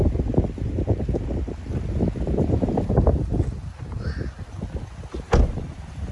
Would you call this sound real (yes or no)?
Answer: yes